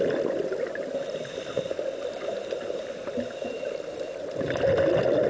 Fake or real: real